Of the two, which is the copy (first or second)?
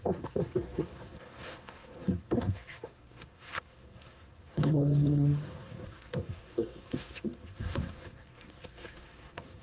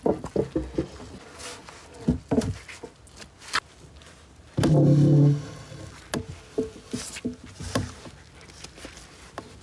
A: first